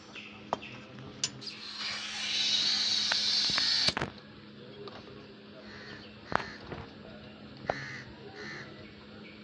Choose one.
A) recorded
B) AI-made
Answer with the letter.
A